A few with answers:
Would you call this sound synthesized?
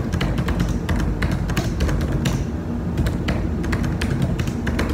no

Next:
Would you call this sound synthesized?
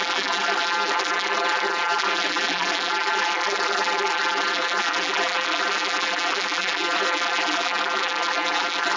yes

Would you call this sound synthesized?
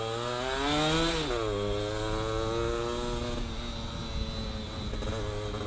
no